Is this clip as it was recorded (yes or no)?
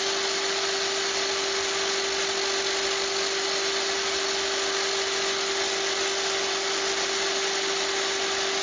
yes